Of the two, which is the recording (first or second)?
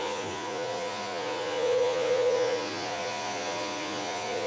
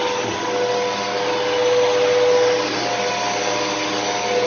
second